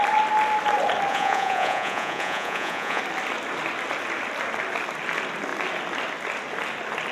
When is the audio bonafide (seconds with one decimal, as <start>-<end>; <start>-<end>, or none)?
0.0-1.1; 3.0-7.1